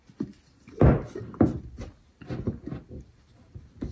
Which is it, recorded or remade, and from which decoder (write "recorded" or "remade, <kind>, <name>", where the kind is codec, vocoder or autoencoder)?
recorded